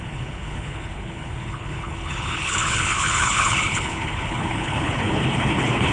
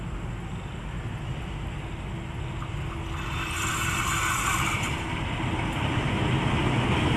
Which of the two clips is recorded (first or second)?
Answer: second